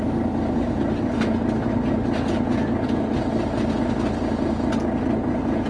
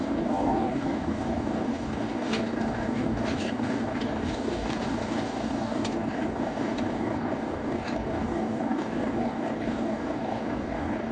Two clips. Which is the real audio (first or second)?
first